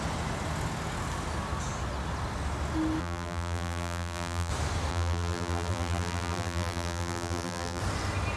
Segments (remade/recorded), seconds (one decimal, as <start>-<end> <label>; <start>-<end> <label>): 0.0-3.0 recorded; 3.0-4.5 remade; 4.5-4.9 recorded; 4.9-7.8 remade; 7.8-8.4 recorded